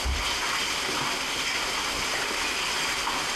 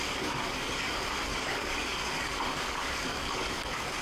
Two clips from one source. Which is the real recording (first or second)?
first